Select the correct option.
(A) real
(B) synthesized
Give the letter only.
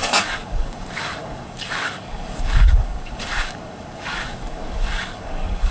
B